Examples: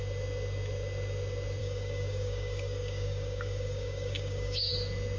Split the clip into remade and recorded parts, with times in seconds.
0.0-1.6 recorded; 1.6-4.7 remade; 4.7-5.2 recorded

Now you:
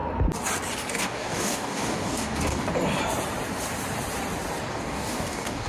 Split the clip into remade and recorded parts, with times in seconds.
0.0-0.9 recorded; 0.9-2.7 remade; 2.7-4.7 recorded; 4.7-5.7 remade

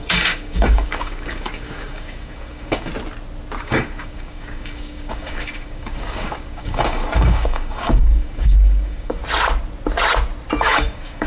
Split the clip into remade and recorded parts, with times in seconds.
0.0-2.9 remade; 2.9-3.6 recorded; 3.6-9.2 remade; 9.2-10.6 recorded; 10.6-11.3 remade

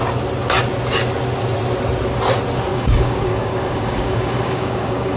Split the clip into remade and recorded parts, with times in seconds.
0.0-2.7 recorded; 2.7-5.2 remade